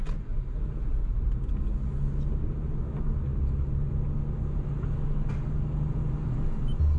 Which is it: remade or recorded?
recorded